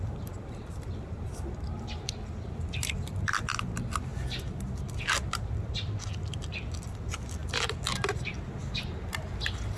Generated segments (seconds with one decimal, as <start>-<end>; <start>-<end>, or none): 0.0-4.1; 5.3-7.4; 8.0-8.6